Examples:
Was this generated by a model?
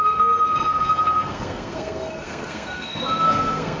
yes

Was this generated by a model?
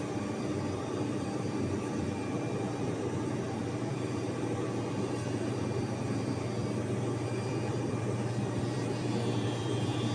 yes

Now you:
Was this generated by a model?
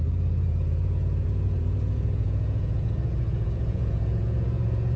yes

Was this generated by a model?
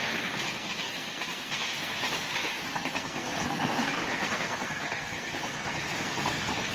yes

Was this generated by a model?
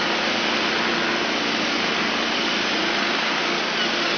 no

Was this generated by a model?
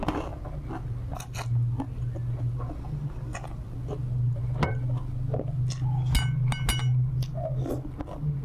no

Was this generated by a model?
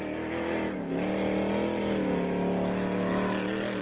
no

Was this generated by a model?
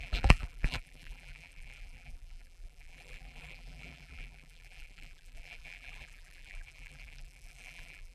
yes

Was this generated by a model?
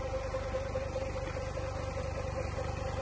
no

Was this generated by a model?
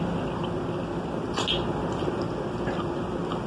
no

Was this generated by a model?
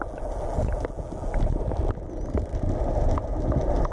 no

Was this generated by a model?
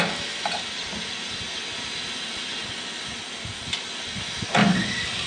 no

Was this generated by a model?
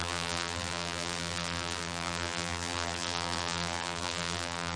yes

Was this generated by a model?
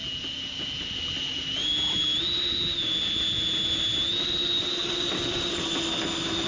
no